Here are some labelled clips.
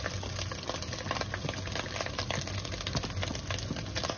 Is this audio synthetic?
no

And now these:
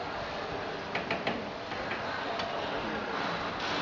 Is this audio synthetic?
no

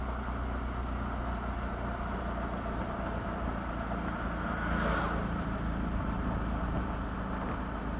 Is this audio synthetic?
no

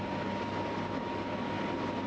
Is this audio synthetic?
no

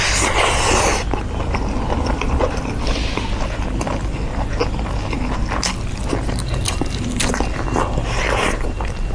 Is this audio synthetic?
no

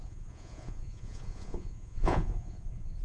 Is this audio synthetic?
yes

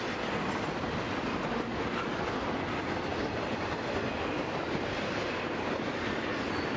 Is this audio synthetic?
no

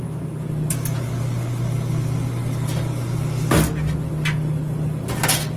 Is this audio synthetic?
no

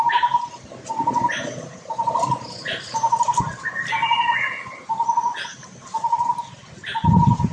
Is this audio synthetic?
no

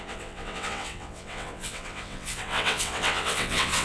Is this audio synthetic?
yes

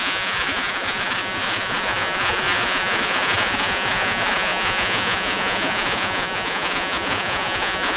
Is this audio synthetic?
yes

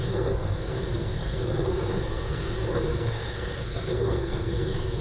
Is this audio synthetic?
yes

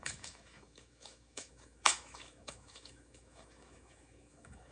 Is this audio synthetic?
yes